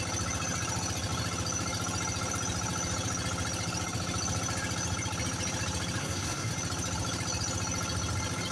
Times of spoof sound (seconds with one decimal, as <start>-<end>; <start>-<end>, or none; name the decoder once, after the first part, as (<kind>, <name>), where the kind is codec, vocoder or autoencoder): 6.0-6.5 (codec, SNAC)